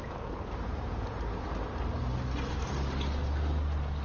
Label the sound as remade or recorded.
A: recorded